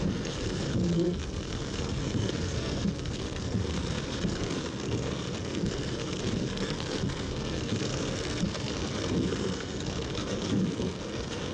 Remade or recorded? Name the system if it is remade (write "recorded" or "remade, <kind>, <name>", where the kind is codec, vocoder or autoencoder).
remade, codec, SNAC